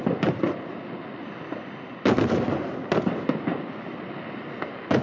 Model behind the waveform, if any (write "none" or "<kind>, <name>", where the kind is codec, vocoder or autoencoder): none